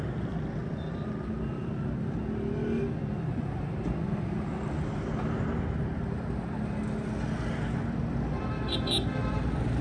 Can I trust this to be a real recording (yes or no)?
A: yes